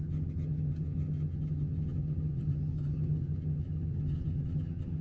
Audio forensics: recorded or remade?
remade